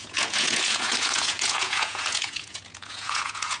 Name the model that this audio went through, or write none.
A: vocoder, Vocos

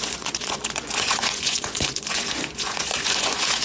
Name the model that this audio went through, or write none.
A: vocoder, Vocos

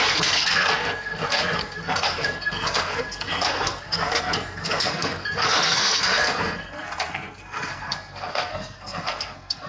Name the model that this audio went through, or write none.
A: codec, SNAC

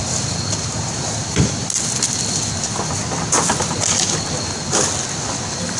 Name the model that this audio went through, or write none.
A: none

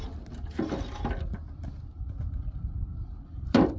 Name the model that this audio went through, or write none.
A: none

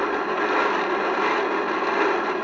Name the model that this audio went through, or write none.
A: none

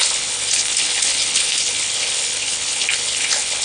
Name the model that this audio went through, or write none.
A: codec, HILCodec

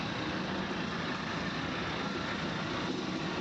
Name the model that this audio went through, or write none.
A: none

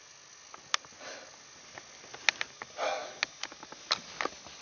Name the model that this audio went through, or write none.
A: none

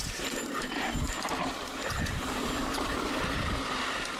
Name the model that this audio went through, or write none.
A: vocoder, BigVGAN v2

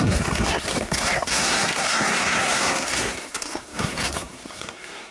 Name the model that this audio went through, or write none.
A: codec, SNAC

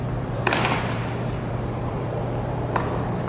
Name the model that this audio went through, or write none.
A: vocoder, BigVGAN v2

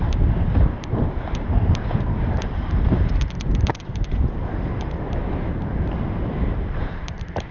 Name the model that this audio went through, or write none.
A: vocoder, BigVGAN v2